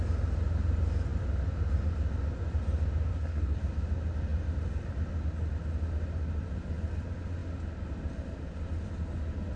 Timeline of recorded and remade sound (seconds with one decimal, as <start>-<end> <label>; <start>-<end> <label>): 0.0-3.1 recorded; 3.1-3.6 remade; 3.6-9.6 recorded